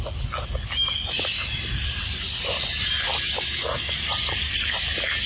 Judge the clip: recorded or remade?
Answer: recorded